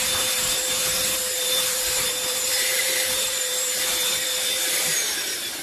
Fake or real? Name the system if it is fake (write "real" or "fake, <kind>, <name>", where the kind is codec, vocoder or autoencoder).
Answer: fake, vocoder, BigVGAN v2